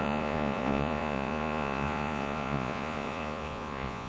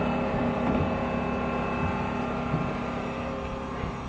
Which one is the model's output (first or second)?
first